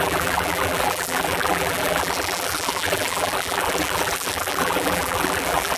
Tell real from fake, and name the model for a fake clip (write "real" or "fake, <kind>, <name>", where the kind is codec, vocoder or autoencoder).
fake, vocoder, BigVGAN v2